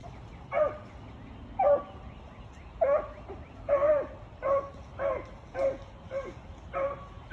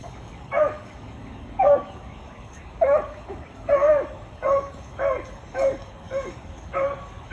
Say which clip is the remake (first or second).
second